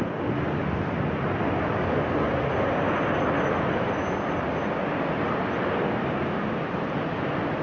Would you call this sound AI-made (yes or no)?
no